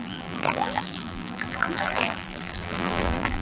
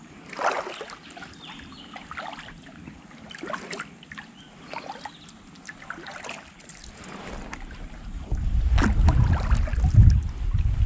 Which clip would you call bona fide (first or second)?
second